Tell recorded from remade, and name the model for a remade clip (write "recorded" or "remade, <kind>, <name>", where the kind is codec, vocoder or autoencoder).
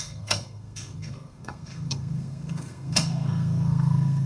remade, codec, SNAC